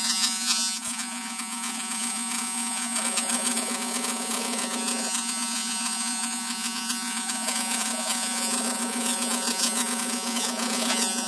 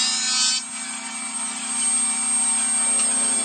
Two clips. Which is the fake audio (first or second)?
first